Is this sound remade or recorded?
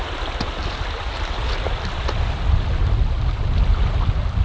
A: recorded